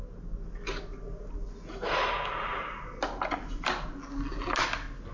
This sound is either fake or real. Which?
real